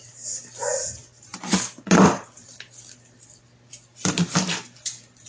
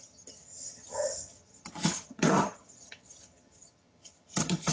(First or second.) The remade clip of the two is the second